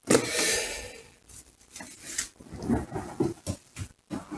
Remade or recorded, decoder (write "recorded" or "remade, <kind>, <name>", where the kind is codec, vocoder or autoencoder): recorded